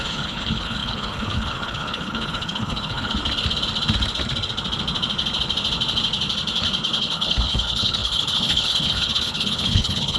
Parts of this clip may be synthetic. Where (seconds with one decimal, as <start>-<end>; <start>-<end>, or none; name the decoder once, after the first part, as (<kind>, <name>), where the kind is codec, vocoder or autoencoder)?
0.0-3.2 (codec, HILCodec); 7.0-10.2